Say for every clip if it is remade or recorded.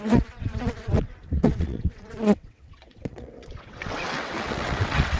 remade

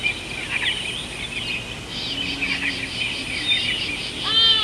recorded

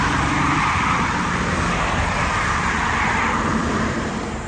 remade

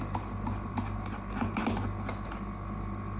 recorded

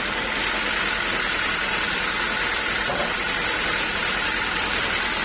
recorded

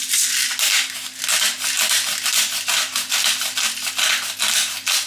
recorded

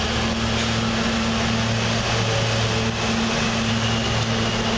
recorded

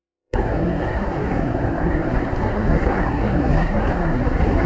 remade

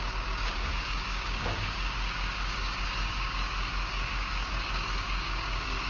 remade